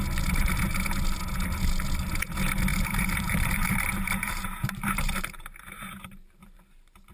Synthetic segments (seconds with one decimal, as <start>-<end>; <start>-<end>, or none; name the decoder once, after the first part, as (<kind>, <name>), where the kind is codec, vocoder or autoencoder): 2.7-7.1 (vocoder, BigVGAN v2)